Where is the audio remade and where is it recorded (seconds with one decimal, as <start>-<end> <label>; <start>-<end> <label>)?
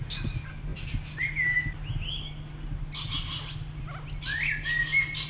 0.0-5.3 recorded